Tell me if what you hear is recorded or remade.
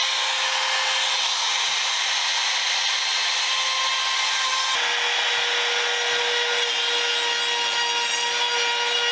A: recorded